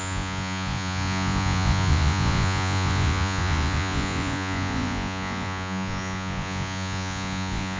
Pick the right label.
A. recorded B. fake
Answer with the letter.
B